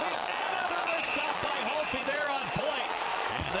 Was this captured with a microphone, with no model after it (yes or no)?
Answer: no